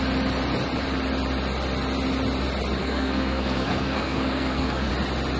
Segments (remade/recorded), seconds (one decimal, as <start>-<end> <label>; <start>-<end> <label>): 0.0-2.8 recorded; 2.8-4.9 remade; 4.9-5.4 recorded